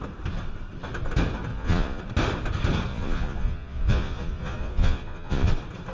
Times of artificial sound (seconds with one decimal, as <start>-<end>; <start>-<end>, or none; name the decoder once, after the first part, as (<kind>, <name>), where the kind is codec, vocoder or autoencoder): 1.5-2.0 (vocoder, Vocos); 2.9-5.5